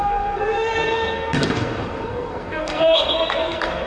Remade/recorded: remade